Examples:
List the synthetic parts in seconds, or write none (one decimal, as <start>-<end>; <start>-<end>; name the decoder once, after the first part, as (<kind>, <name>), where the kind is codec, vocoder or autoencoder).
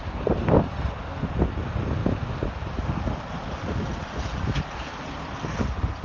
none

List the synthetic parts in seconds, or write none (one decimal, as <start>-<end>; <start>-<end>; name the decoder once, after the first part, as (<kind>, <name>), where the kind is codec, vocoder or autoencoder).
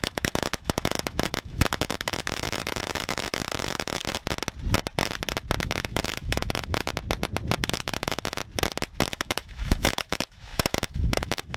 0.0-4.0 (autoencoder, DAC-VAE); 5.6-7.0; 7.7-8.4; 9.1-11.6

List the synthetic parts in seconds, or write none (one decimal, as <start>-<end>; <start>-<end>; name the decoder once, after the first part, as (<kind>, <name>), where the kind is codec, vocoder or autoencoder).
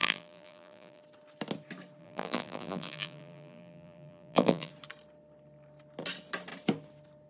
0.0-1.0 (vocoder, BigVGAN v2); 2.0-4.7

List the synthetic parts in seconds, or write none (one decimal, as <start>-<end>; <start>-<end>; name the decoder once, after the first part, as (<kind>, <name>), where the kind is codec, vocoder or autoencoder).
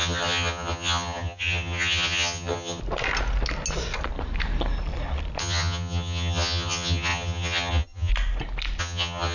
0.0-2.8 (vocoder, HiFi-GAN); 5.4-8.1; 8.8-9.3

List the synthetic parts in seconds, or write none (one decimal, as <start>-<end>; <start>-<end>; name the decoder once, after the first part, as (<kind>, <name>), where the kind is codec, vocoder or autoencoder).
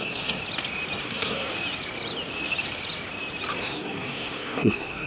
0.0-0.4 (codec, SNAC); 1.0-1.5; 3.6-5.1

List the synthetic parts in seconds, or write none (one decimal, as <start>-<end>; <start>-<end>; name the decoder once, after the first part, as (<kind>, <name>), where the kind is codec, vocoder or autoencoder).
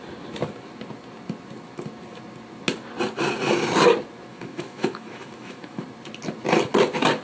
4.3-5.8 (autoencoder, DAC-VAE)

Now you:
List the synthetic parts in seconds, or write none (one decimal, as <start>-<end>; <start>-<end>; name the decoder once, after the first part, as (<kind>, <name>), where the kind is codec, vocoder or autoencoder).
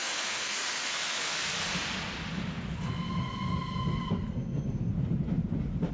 0.0-1.4 (codec, SNAC); 4.3-4.9